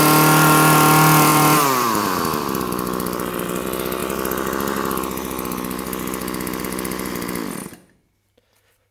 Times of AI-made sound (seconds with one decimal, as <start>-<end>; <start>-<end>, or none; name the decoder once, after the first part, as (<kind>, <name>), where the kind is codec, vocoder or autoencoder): 1.3-3.3 (vocoder, BigVGAN v2)